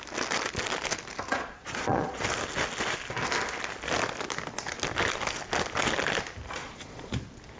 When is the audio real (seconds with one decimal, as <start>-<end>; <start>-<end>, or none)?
0.0-1.3; 2.2-6.6; 7.1-7.6